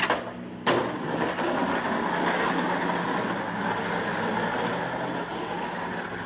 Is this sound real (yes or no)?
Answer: yes